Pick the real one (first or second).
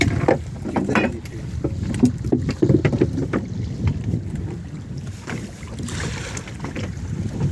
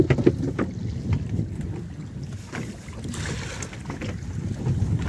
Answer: second